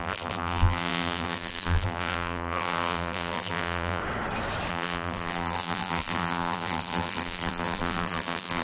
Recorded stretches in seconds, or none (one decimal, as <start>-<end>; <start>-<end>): 4.0-4.7